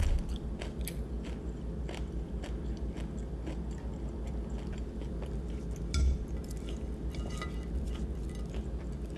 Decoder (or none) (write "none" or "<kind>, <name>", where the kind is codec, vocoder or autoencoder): none